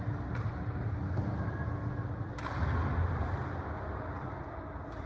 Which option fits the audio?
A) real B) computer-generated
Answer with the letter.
A